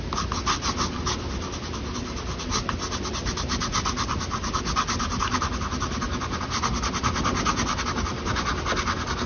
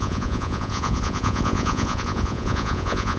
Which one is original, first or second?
first